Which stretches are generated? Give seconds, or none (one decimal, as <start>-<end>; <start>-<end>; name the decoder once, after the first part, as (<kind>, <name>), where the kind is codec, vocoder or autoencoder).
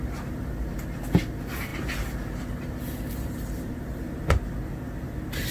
none